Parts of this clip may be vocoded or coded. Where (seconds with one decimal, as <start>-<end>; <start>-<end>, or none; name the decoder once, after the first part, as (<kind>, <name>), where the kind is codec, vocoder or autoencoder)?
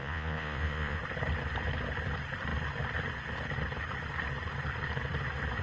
0.0-1.0 (vocoder, Vocos)